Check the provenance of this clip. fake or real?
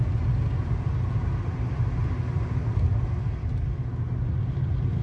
real